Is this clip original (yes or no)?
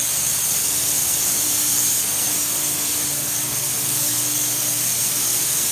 no